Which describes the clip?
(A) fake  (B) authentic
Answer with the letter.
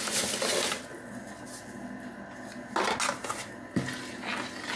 B